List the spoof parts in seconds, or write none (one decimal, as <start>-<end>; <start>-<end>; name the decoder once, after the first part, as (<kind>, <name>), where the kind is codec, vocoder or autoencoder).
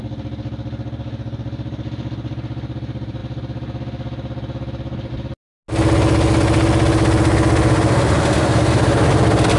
none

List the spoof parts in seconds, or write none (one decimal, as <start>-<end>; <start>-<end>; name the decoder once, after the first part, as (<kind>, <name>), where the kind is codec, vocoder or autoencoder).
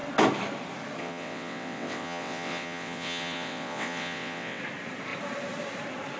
1.0-4.6 (vocoder, WaveNeXt)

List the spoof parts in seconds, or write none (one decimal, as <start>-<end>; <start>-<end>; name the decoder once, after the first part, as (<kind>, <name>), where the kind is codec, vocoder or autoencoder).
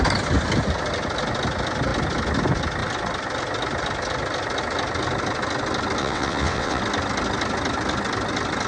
6.0-6.8 (vocoder, WaveNeXt)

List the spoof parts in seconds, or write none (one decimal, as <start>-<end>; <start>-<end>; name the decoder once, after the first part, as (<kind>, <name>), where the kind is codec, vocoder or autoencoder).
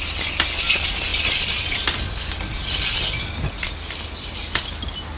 none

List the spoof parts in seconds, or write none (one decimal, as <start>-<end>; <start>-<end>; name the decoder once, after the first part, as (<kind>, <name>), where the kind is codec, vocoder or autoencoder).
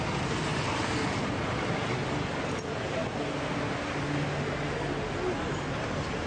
none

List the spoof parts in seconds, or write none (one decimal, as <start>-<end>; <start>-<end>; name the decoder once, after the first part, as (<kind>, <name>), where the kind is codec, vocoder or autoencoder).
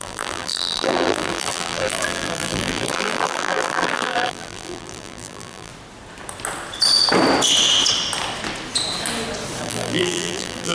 0.0-5.7 (vocoder, BigVGAN v2); 9.6-10.7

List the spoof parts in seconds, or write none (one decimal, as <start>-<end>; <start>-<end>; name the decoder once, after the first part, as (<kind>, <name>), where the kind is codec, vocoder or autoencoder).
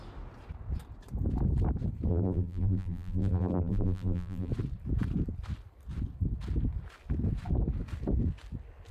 2.1-4.5 (vocoder, BigVGAN v2)